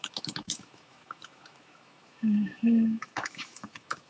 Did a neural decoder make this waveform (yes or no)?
yes